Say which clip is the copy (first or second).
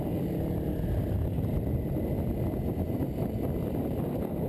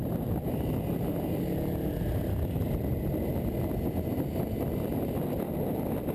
first